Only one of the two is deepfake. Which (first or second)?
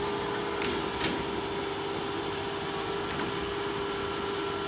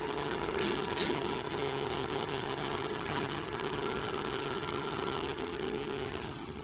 second